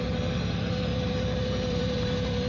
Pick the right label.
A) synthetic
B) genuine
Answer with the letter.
A